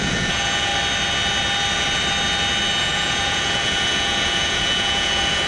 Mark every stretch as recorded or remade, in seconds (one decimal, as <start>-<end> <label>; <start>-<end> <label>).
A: 0.0-0.7 remade; 0.7-2.8 recorded; 2.8-5.5 remade